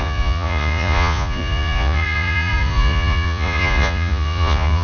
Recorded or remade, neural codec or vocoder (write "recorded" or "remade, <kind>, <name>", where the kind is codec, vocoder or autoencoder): remade, vocoder, Vocos